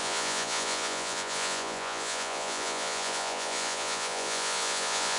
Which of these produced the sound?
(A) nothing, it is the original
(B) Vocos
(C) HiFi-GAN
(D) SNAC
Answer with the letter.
B